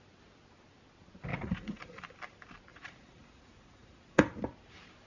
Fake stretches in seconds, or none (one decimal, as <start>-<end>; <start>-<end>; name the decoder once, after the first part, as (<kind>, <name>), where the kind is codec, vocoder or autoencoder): 1.3-2.0 (vocoder, Vocos); 2.7-4.3